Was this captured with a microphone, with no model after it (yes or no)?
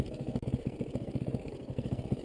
no